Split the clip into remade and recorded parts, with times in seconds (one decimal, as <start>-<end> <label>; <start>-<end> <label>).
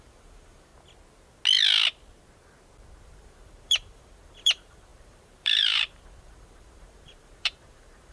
0.0-0.7 remade; 0.7-3.0 recorded; 3.0-8.1 remade